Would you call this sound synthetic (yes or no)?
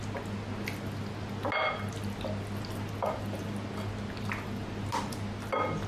no